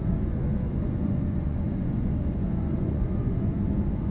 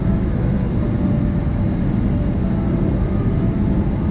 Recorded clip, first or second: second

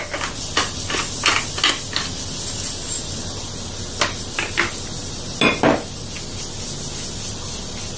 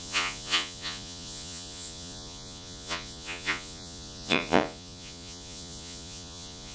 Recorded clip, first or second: first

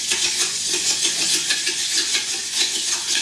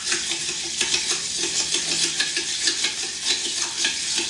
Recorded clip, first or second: second